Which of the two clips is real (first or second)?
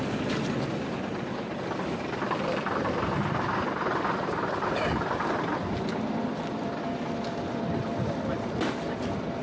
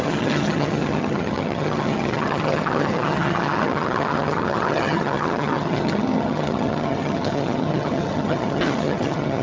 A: first